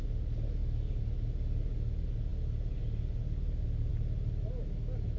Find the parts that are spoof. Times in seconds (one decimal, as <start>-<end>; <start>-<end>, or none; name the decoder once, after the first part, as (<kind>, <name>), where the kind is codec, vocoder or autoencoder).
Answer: none